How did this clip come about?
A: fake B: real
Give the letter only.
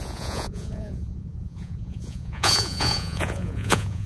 A